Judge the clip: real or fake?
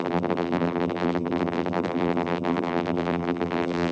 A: fake